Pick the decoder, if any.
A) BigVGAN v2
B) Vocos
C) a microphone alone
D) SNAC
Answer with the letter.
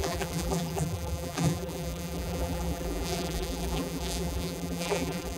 A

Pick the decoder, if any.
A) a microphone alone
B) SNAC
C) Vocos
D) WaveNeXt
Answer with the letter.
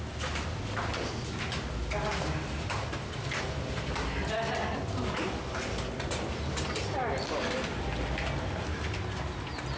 A